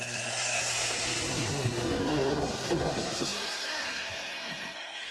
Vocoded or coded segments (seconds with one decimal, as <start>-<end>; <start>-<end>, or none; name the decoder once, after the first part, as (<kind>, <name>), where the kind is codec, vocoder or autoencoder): 0.0-5.1 (codec, SNAC)